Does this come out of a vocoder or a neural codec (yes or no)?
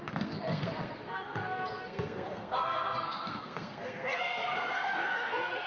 yes